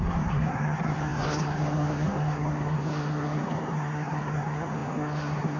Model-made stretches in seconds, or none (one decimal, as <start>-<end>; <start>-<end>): 0.0-5.6